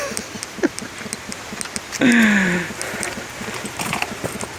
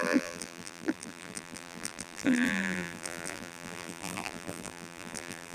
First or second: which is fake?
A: second